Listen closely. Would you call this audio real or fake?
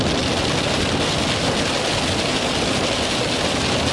real